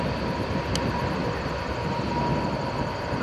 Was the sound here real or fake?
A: real